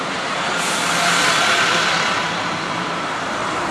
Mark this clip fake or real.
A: fake